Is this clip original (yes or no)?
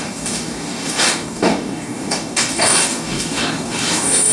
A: no